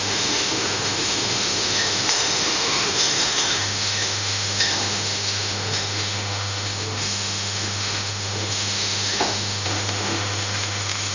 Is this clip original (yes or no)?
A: no